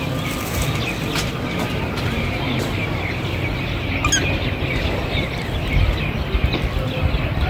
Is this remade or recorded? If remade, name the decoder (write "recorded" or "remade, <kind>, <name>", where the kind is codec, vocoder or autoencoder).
recorded